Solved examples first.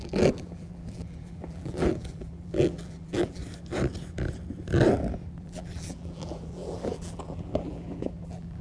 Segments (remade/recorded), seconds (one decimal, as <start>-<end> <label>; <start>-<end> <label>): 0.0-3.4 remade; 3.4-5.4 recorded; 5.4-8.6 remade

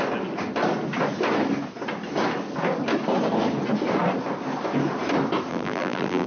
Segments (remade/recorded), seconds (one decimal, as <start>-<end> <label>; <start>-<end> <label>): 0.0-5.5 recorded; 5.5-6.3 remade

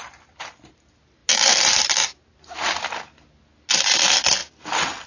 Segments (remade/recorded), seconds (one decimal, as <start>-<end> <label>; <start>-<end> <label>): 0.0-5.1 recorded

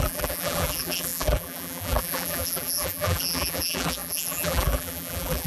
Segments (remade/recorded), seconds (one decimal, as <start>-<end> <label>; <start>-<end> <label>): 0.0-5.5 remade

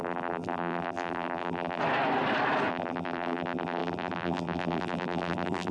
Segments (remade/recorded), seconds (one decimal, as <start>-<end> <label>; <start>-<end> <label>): 0.0-1.8 remade; 1.8-2.7 recorded; 2.7-5.7 remade

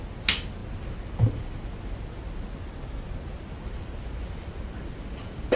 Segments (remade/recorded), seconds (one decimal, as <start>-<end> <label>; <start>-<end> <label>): 0.0-5.6 recorded

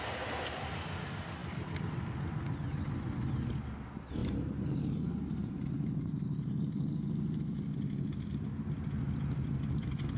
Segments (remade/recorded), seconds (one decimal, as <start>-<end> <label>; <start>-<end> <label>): 0.0-4.2 recorded; 4.2-7.4 remade; 7.4-10.2 recorded